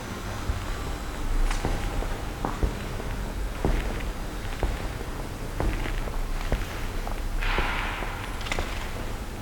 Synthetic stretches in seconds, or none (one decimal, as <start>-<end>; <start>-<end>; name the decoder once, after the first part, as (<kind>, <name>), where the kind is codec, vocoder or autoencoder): none